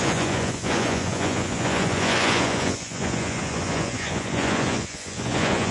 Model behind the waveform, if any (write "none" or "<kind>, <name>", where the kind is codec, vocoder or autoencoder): vocoder, Vocos